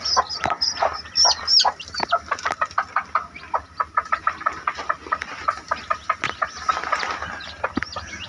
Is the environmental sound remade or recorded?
recorded